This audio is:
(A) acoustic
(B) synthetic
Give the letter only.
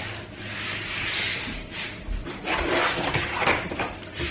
B